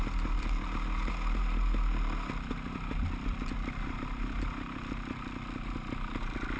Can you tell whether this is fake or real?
real